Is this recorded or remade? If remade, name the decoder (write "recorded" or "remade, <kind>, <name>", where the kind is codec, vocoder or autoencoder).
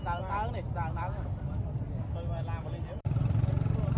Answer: recorded